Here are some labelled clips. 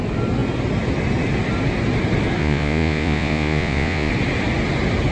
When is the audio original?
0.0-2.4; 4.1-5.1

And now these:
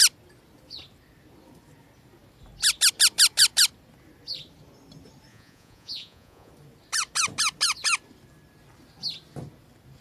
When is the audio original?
0.0-5.3; 6.5-10.0

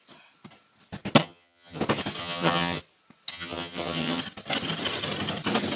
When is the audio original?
0.0-1.2; 1.8-2.2; 2.8-3.3; 4.2-5.8

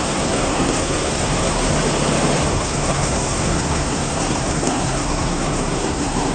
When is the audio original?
1.7-2.5

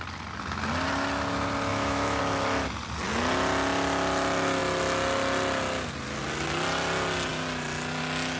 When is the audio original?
0.0-1.7; 2.2-8.4

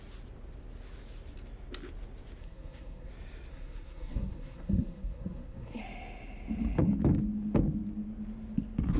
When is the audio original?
0.0-2.4; 3.1-3.5; 5.8-9.0

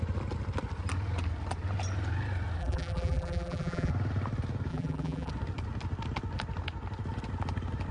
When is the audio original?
0.0-2.6; 3.9-4.7; 5.3-7.9